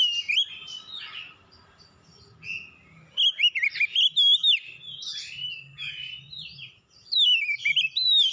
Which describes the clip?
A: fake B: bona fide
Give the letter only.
B